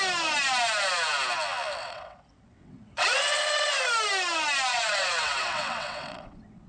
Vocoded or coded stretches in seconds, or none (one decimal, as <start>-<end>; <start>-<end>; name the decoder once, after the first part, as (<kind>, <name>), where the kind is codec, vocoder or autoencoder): 1.8-3.5 (vocoder, WaveNeXt); 4.7-6.7